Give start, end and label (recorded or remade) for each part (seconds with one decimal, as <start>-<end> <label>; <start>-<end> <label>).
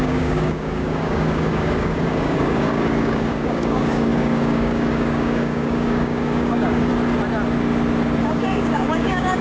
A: 0.0-6.9 remade; 6.9-8.2 recorded; 8.2-9.4 remade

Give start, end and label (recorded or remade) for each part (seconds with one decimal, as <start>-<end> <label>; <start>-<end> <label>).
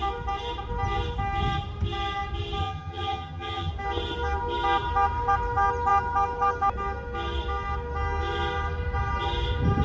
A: 0.0-2.6 recorded; 2.6-3.7 remade; 3.7-9.8 recorded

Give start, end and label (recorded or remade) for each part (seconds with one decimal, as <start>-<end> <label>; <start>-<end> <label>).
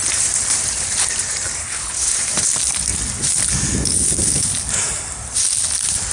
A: 0.0-1.6 recorded; 1.6-2.3 remade; 2.3-6.1 recorded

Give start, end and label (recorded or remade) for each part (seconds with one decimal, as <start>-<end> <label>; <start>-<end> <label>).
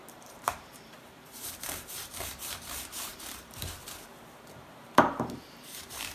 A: 0.0-6.1 remade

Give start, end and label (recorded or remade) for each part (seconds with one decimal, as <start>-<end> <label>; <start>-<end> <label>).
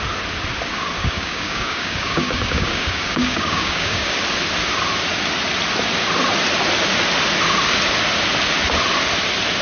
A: 0.0-1.0 recorded; 1.0-4.1 remade; 4.1-9.6 recorded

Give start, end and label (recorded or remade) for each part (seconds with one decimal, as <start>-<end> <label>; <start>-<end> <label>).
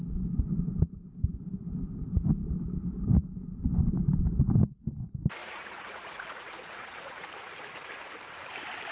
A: 0.0-5.4 recorded; 5.4-7.3 remade; 7.3-8.9 recorded